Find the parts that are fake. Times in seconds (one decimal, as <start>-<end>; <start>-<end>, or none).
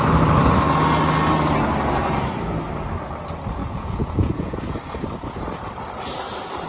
3.6-4.6